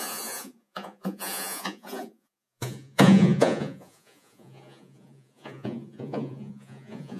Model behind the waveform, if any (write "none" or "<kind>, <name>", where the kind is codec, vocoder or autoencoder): vocoder, Vocos